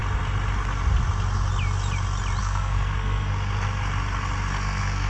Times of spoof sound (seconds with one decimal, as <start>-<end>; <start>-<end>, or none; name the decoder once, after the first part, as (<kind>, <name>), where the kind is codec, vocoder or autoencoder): 2.4-3.3 (codec, SNAC); 4.5-5.1

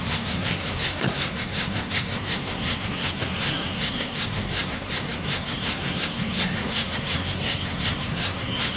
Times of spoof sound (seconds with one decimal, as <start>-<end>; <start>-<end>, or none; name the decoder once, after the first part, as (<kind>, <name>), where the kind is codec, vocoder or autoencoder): 0.0-8.8 (codec, SNAC)

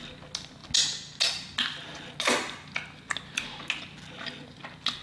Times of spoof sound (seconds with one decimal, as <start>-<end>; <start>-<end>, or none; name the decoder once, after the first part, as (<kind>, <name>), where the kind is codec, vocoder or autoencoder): none

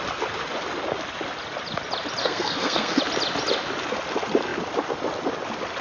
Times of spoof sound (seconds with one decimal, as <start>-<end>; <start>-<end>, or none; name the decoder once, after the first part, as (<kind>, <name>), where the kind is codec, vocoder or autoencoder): 2.2-3.0 (codec, SNAC)